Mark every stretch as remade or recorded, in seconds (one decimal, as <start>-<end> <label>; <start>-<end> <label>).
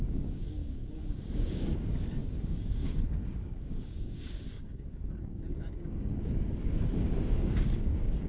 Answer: 0.0-8.3 remade